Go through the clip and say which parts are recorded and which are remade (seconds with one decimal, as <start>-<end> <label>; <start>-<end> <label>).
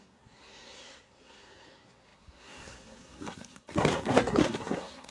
0.0-5.1 remade